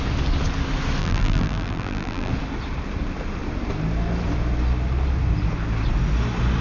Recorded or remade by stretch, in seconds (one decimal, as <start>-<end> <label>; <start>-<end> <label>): 0.0-1.0 recorded; 1.0-2.3 remade; 2.3-6.6 recorded